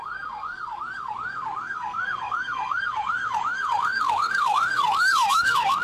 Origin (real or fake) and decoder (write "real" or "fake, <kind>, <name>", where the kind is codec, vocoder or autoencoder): fake, codec, SNAC